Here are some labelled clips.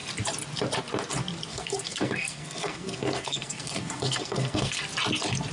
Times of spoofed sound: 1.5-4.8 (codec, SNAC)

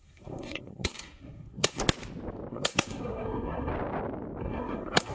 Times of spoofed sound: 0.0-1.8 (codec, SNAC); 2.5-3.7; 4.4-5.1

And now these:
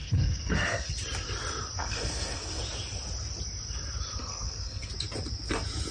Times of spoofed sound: 0.0-0.9 (codec, SNAC); 1.8-2.6; 4.2-4.9

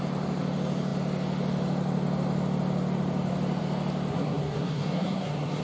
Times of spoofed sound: 4.1-5.6 (codec, SNAC)

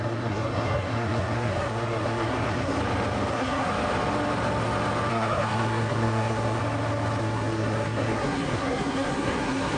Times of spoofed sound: 0.0-2.8 (codec, SNAC); 3.3-3.7; 5.1-6.6; 7.2-9.8

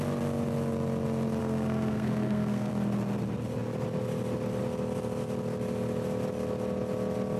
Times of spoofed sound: 1.4-2.7 (codec, SNAC)

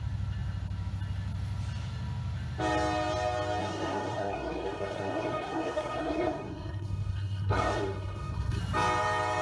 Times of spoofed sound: 3.6-8.6 (codec, SNAC)

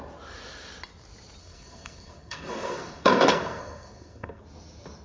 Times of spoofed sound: 1.4-4.4 (codec, SNAC)